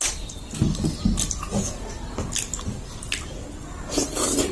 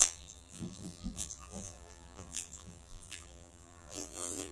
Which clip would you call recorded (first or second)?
first